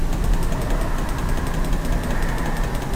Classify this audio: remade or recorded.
recorded